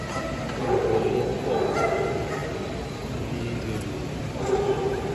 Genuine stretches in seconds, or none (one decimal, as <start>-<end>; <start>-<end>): 0.0-5.1